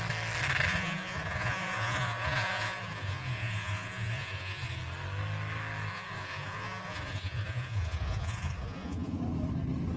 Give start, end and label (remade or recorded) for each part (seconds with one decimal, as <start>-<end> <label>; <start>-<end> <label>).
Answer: 0.0-0.7 recorded; 0.7-4.8 remade; 4.8-5.9 recorded; 5.9-9.2 remade; 9.2-10.0 recorded